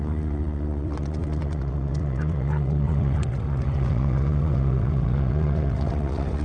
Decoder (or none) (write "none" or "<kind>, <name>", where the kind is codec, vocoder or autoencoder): vocoder, WaveNeXt